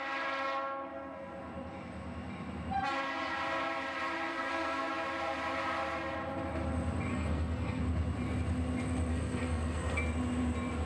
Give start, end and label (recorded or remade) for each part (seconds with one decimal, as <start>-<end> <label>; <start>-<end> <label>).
0.0-4.3 recorded; 4.3-4.9 remade; 4.9-7.1 recorded; 7.1-7.8 remade; 7.8-9.1 recorded; 9.1-10.0 remade; 10.0-10.9 recorded